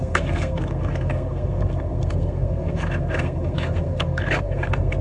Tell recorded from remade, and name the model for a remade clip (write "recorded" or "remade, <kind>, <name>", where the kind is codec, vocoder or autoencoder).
remade, codec, SNAC